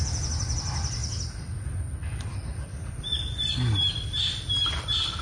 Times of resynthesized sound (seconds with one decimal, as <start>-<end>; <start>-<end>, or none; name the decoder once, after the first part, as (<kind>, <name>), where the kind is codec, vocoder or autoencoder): none